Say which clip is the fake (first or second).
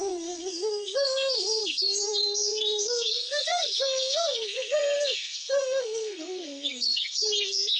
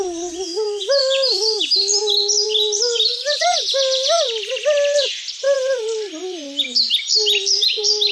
first